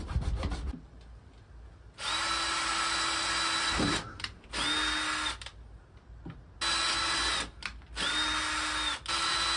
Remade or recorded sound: recorded